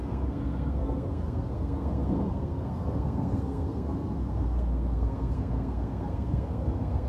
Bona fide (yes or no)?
no